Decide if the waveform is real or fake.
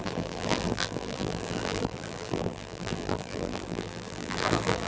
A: fake